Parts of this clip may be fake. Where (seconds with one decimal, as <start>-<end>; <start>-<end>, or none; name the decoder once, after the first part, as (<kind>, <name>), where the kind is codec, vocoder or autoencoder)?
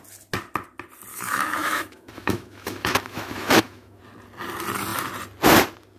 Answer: 1.1-4.0 (autoencoder, DAC-VAE)